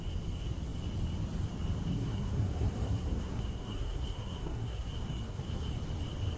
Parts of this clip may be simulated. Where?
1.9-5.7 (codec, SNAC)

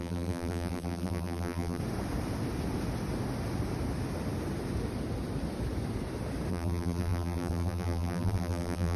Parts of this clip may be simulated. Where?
0.0-1.8 (vocoder, BigVGAN v2); 6.5-9.0